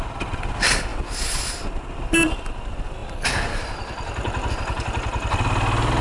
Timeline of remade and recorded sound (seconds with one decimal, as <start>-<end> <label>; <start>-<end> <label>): 0.0-6.0 recorded